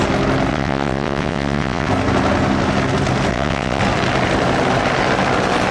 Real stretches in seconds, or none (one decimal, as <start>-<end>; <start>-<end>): 0.0-0.5; 1.9-3.3; 3.8-5.7